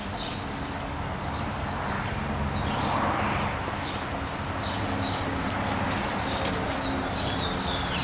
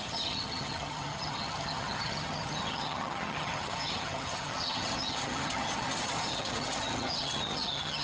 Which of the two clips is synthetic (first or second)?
second